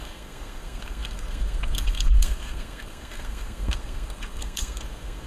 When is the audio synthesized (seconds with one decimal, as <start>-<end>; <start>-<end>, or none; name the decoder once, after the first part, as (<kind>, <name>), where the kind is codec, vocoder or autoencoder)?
0.0-5.3 (codec, SNAC)